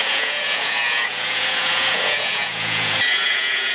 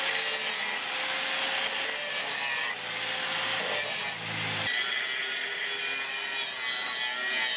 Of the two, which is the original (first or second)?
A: second